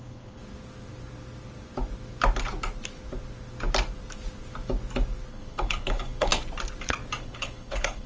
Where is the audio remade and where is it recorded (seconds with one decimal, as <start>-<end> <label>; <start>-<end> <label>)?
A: 0.0-0.4 remade; 0.4-5.3 recorded; 5.3-6.3 remade; 6.3-7.2 recorded; 7.2-8.1 remade